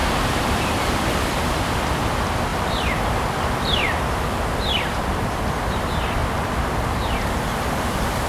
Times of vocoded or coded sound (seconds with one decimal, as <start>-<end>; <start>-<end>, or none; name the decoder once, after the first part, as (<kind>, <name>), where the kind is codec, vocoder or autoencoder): 0.0-1.7 (vocoder, BigVGAN v2); 2.5-4.4; 6.2-8.3